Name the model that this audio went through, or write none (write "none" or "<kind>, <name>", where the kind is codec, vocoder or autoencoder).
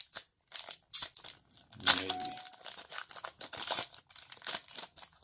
none